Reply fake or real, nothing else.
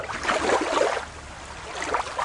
real